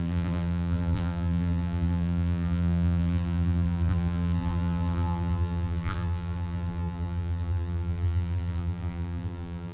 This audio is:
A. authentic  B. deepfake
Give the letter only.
B